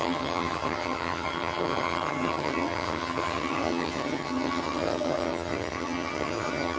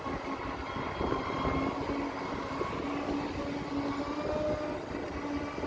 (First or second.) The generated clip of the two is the first